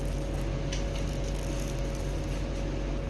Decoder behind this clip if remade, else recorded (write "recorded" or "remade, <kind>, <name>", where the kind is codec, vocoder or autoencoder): recorded